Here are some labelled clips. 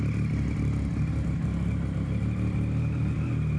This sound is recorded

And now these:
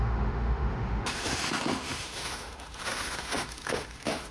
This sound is remade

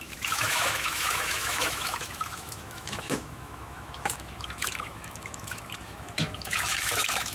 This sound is remade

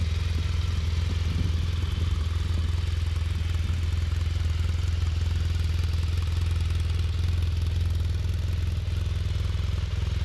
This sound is recorded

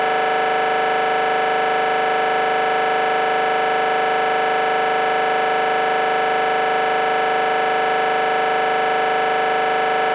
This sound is remade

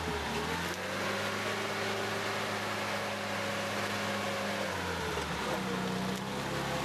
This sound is recorded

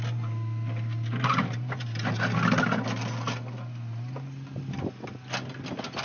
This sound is recorded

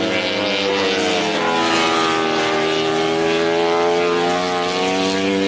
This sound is recorded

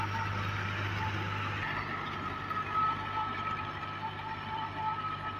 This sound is recorded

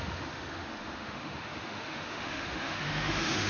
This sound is remade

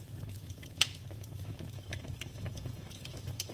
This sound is remade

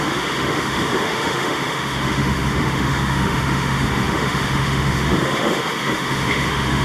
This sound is remade